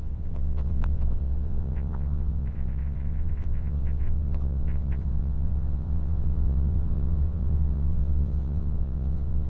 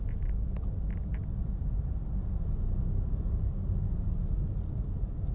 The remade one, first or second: first